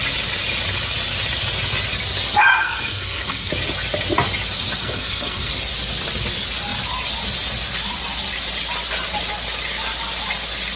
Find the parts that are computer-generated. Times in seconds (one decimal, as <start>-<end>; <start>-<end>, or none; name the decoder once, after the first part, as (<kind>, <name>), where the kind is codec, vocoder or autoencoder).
2.5-3.5 (codec, SNAC); 4.8-5.5